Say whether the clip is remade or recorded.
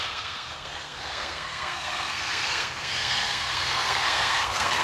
remade